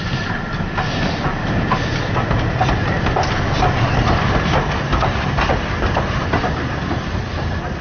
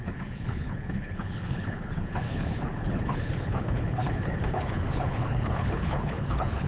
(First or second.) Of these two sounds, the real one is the first